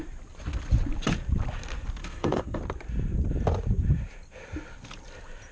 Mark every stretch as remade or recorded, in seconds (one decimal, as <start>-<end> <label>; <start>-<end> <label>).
0.0-2.0 recorded; 2.0-2.6 remade; 2.6-5.5 recorded